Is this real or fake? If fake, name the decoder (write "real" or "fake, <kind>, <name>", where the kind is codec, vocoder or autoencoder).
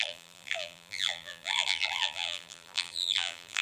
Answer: fake, vocoder, BigVGAN v2